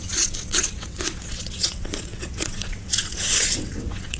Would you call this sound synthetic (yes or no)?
yes